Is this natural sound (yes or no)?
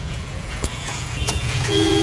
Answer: no